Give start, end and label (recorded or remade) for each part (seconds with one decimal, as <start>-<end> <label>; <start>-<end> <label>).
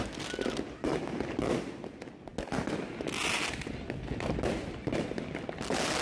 0.0-6.0 recorded